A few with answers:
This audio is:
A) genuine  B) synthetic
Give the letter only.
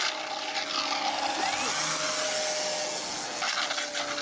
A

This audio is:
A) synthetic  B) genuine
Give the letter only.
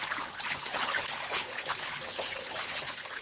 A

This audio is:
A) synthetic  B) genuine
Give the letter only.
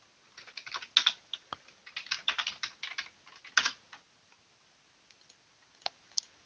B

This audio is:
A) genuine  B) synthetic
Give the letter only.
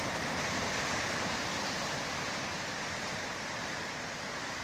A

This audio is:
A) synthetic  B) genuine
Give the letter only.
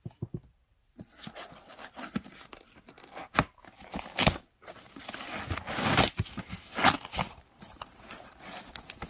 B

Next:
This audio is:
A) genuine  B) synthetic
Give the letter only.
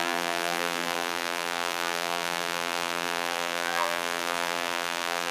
B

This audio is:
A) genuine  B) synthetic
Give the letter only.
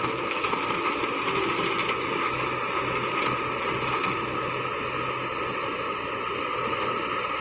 A